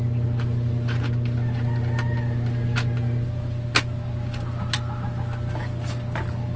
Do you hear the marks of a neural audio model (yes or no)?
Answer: no